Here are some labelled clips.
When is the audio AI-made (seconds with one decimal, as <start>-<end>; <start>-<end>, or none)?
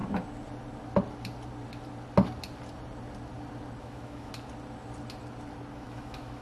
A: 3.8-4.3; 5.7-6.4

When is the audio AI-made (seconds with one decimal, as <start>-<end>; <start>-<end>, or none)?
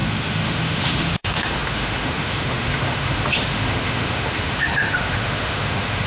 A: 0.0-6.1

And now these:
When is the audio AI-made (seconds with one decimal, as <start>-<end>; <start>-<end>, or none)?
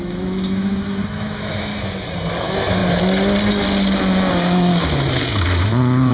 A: 0.0-1.7; 2.4-2.8; 4.3-4.7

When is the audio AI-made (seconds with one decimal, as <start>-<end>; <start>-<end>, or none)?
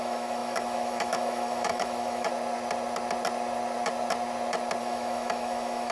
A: 0.0-2.3; 4.8-5.9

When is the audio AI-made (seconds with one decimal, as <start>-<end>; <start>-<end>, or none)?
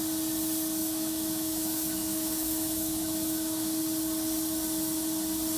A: 0.8-3.8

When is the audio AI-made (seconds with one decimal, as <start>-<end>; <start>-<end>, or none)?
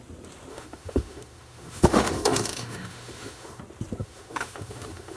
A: 0.5-3.6; 4.0-5.2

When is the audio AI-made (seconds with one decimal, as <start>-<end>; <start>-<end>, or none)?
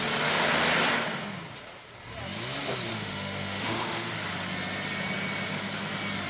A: 2.9-4.1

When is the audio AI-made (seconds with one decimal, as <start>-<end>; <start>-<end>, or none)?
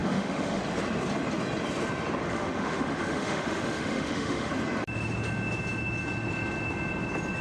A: 0.0-0.6; 2.2-4.5